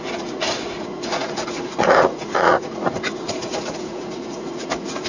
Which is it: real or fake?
fake